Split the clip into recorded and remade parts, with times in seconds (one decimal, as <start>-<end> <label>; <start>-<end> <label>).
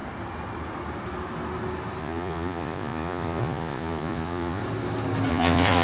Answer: 0.0-2.0 recorded; 2.0-4.6 remade; 4.6-5.3 recorded; 5.3-5.8 remade